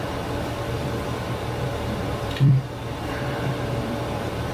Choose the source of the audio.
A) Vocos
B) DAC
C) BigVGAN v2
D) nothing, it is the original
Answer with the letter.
C